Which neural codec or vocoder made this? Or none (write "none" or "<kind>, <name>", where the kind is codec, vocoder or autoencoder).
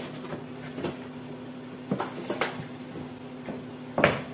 none